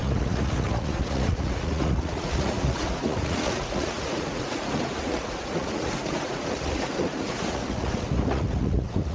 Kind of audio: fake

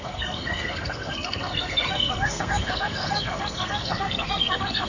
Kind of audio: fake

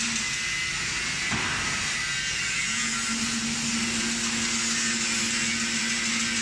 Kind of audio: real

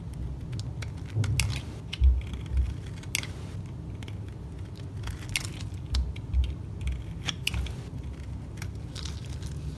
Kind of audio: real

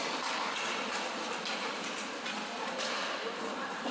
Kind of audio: real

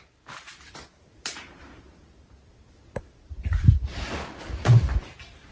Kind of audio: fake